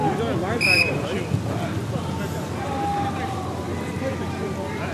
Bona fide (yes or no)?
yes